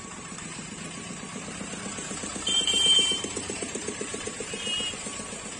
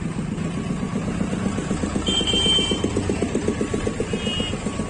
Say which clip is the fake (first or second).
first